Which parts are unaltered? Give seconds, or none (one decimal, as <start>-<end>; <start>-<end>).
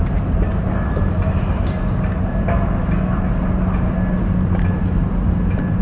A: 0.0-5.8